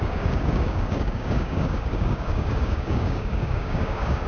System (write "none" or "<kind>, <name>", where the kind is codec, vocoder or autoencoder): codec, DAC